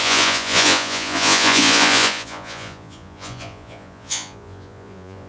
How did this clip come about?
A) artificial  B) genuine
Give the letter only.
A